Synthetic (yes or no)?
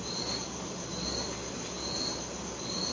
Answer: no